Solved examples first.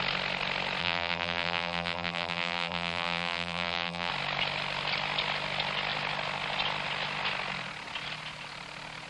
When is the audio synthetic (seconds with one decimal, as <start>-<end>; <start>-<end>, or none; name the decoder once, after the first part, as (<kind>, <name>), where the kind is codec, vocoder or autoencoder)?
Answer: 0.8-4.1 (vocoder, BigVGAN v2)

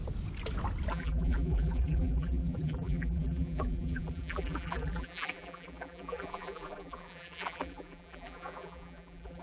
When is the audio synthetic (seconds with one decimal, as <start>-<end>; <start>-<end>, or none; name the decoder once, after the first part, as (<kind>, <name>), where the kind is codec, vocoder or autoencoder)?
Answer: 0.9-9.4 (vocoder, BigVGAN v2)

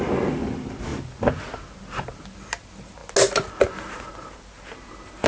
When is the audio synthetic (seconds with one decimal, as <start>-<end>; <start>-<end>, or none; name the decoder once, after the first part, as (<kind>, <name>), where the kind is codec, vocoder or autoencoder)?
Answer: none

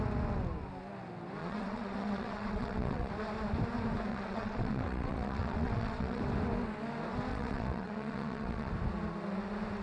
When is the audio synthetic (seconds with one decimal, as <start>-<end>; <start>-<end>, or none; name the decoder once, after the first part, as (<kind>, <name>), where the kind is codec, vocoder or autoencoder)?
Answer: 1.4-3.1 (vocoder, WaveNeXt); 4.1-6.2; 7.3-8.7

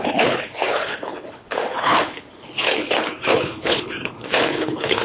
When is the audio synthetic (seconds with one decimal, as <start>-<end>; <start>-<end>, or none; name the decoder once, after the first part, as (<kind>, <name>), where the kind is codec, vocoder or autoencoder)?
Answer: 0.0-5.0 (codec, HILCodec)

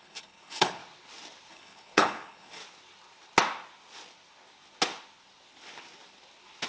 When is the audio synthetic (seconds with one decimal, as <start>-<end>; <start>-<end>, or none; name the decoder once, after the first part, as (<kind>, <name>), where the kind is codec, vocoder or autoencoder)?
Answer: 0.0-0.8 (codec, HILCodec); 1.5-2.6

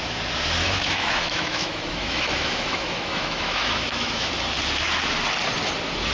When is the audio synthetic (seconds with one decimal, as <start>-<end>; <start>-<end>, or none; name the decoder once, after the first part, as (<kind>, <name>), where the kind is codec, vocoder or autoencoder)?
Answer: 0.6-4.3 (autoencoder, DAC-VAE)

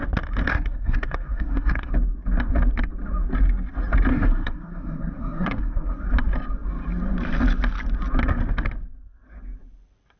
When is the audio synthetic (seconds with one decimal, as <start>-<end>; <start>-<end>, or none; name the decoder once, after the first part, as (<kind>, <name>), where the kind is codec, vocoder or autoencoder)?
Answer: 0.5-1.9 (codec, SNAC); 4.1-6.0